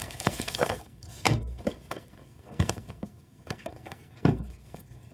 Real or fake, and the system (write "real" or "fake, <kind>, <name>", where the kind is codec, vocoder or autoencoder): fake, codec, SNAC